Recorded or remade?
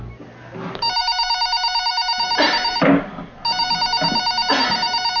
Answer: recorded